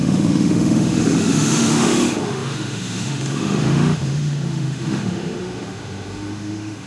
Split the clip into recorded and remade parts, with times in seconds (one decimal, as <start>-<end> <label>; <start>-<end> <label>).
0.0-6.9 remade